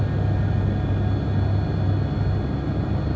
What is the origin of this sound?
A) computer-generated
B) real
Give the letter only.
B